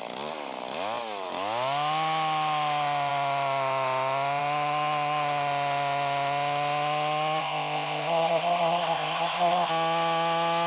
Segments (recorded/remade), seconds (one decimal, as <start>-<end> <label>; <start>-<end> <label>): 0.0-7.4 recorded; 7.4-9.7 remade; 9.7-10.7 recorded